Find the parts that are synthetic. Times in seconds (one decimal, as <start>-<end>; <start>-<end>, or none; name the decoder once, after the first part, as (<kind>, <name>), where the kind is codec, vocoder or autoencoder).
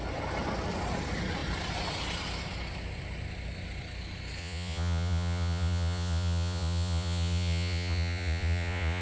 4.4-9.0 (vocoder, Vocos)